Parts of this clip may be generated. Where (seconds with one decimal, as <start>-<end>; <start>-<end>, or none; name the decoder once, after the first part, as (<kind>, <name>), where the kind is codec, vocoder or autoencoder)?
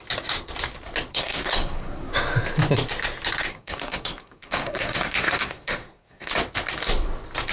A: 1.1-2.1 (codec, SNAC); 3.5-6.3